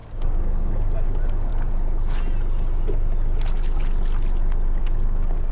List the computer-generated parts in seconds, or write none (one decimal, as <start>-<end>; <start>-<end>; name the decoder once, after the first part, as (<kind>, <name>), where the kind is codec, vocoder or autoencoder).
0.0-1.5 (codec, DAC); 4.8-5.5